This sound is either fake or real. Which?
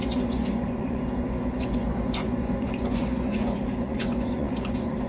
fake